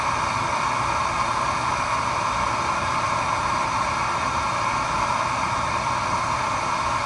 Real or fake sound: real